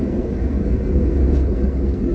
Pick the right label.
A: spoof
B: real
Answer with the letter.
A